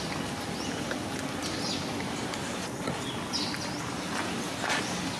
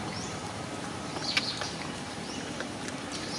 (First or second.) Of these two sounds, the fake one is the second